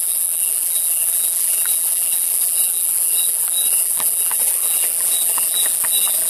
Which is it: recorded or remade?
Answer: remade